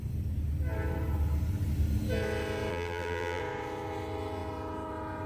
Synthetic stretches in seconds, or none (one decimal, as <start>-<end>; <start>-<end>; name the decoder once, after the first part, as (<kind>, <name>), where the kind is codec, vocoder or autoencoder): 2.7-3.4 (vocoder, BigVGAN v2)

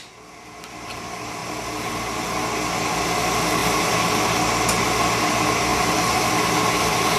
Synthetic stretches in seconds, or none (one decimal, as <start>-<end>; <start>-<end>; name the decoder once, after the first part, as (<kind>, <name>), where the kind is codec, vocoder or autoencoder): 5.7-6.3 (vocoder, BigVGAN v2)

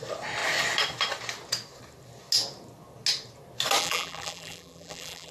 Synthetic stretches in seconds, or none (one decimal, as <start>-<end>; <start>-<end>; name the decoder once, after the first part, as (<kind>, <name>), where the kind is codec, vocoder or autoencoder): 3.8-5.3 (vocoder, BigVGAN v2)

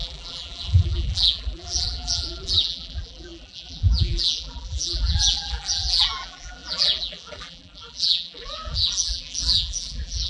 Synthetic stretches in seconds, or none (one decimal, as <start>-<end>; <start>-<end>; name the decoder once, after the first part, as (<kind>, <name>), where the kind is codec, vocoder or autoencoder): 0.0-10.3 (vocoder, BigVGAN v2)

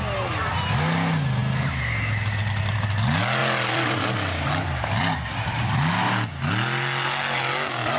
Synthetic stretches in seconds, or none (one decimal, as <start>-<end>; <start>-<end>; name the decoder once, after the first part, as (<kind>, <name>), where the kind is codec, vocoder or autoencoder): 3.4-3.9 (vocoder, BigVGAN v2)

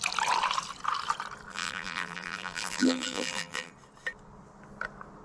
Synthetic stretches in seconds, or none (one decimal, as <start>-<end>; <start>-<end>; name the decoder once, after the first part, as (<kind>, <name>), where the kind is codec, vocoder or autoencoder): 1.5-3.7 (vocoder, BigVGAN v2)